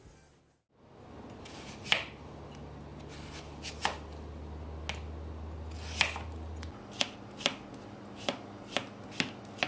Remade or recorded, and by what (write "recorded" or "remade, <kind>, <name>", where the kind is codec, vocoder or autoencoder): recorded